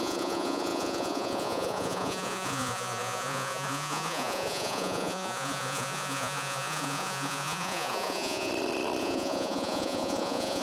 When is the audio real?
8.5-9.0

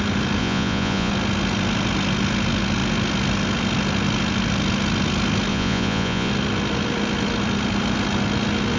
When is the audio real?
0.0-0.4; 1.1-5.5; 6.3-8.8

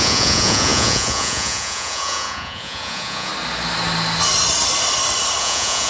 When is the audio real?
3.3-5.4

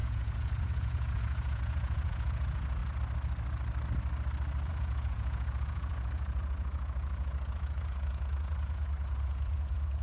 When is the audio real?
2.8-4.7

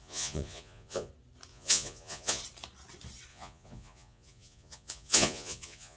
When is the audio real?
1.1-1.5; 2.4-3.3

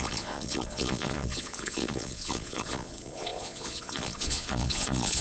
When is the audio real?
none